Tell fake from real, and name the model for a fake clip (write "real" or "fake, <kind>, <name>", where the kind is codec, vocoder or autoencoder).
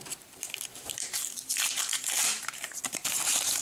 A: fake, vocoder, BigVGAN v2